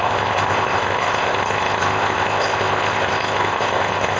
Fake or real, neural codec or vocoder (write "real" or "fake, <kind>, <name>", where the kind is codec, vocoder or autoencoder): fake, codec, ZipCodec